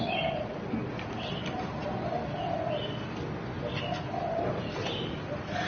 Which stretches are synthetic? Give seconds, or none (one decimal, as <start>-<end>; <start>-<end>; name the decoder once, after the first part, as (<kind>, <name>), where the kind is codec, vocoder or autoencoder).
0.0-0.8 (vocoder, BigVGAN v2); 4.2-5.7